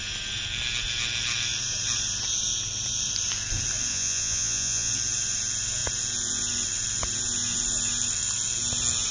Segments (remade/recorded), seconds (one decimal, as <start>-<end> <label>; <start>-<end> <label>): 0.0-3.9 recorded; 3.9-4.9 remade; 4.9-9.1 recorded